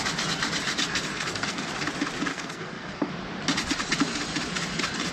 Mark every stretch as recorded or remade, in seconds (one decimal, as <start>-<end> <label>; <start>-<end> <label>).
0.0-1.1 recorded; 1.1-1.7 remade; 1.7-2.3 recorded; 2.3-3.1 remade; 3.1-5.1 recorded